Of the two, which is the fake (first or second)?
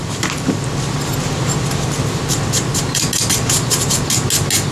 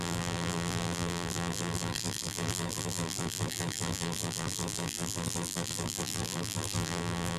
second